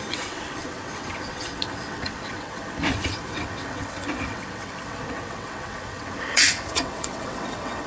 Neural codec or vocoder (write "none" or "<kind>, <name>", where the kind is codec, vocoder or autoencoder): vocoder, WaveNeXt